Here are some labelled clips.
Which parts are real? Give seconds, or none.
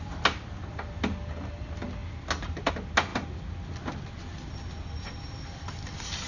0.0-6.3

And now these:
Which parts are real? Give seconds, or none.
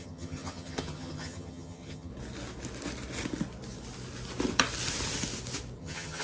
2.1-5.8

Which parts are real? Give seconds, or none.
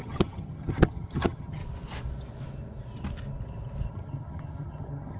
1.6-3.9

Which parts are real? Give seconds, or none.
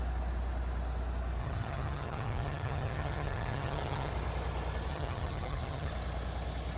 0.0-1.4; 4.1-4.9; 5.9-6.8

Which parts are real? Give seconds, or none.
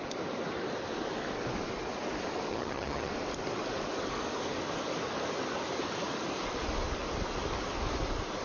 0.0-2.5; 3.1-8.4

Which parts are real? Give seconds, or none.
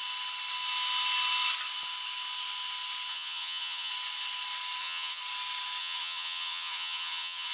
0.0-3.1; 3.9-4.8; 5.2-5.8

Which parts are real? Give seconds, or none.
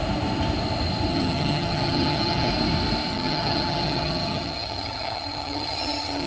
0.0-1.1; 2.5-3.1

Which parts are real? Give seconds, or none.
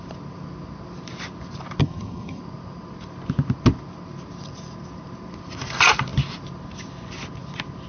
0.0-1.8; 2.4-7.9